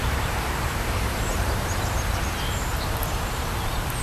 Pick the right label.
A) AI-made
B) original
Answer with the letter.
A